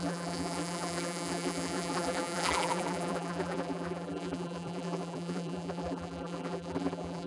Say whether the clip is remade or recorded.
remade